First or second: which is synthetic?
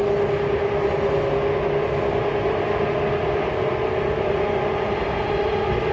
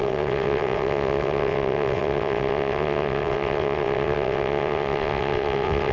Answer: second